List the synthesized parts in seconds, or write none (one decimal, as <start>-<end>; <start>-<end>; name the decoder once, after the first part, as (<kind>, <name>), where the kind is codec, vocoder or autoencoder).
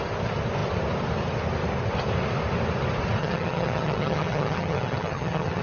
3.2-5.6 (vocoder, HiFi-GAN)